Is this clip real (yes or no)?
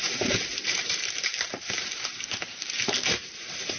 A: no